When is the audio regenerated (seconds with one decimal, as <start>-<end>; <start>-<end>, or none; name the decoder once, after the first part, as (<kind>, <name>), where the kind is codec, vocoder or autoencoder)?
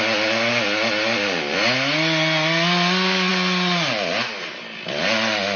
none